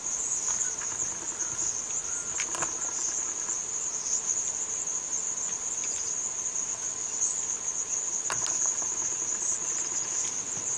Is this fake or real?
real